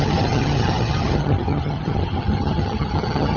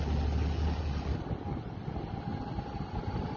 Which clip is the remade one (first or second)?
first